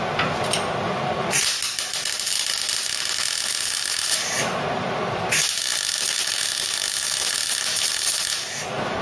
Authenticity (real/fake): real